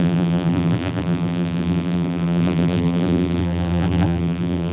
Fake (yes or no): yes